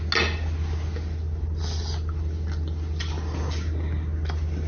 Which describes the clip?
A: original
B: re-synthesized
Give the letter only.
A